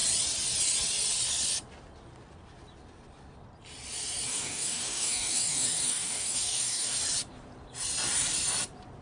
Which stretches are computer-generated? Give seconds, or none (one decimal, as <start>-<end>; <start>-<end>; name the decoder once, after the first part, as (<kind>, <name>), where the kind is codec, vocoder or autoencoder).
4.3-7.0 (codec, DAC)